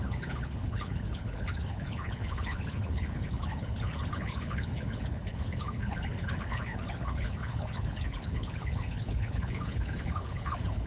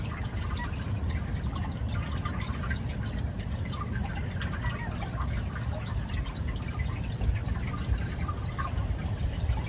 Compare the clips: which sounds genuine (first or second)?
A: second